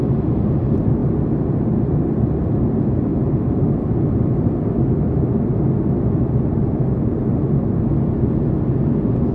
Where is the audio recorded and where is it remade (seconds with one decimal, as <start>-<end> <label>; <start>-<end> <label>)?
0.0-9.3 recorded